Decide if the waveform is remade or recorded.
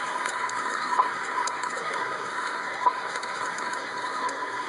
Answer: remade